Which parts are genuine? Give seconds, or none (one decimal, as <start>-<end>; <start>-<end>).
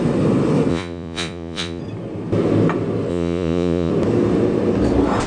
0.0-0.7; 1.8-3.1; 3.9-5.3